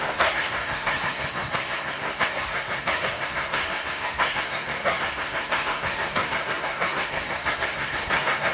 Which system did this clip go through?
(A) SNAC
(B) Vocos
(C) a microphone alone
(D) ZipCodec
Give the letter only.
A